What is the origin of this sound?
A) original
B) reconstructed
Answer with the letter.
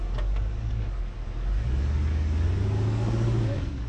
B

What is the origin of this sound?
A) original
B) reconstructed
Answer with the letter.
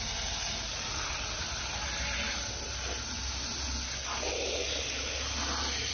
A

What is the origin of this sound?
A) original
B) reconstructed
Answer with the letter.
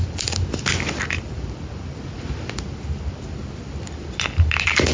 A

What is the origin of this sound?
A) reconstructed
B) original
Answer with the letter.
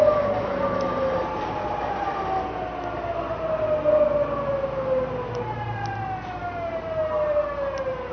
B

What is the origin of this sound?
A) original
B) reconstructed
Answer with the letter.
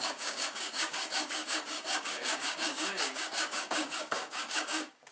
B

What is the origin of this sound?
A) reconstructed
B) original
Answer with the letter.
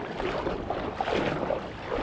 B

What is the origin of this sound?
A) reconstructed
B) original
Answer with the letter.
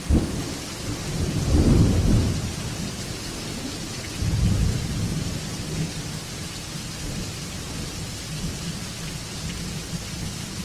B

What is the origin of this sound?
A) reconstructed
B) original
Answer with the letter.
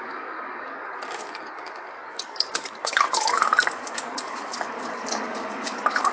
A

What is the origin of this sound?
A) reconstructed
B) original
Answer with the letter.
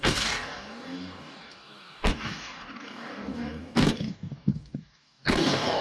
A